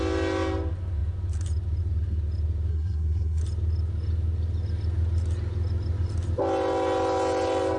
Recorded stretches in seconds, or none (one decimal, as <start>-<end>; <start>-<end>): 0.0-2.7; 3.4-7.8

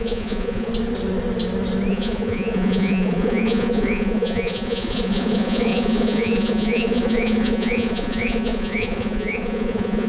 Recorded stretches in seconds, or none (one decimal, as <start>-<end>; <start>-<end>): 0.7-1.9